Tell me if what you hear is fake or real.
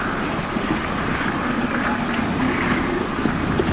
real